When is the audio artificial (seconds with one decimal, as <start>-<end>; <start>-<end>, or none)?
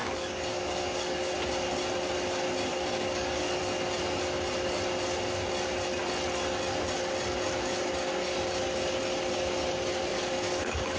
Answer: 0.0-1.3; 2.7-3.6; 10.1-11.0